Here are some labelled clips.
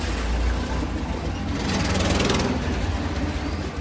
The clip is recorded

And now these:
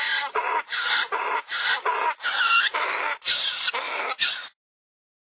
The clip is recorded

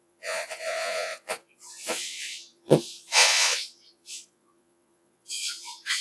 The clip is remade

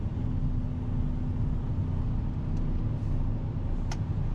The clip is recorded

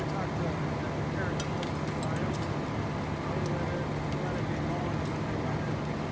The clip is recorded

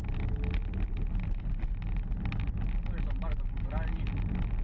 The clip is recorded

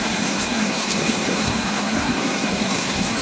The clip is remade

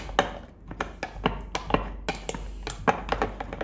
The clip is recorded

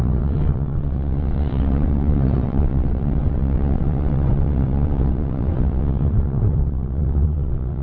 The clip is remade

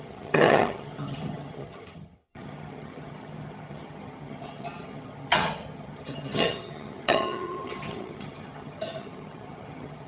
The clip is remade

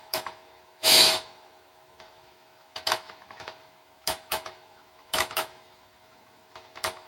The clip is remade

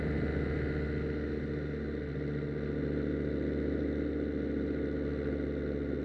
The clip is recorded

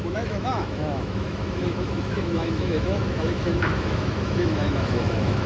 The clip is remade